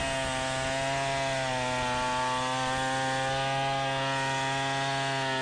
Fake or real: real